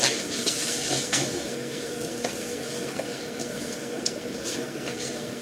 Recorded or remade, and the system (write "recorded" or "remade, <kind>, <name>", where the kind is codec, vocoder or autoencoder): remade, codec, SNAC